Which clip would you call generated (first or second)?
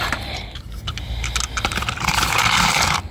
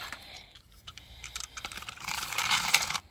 second